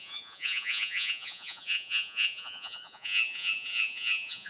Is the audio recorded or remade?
remade